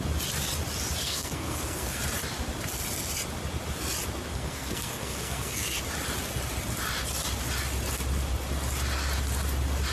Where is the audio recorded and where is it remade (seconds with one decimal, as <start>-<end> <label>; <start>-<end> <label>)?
0.0-1.0 recorded; 1.0-2.0 remade; 2.0-4.3 recorded; 4.3-5.8 remade; 5.8-9.9 recorded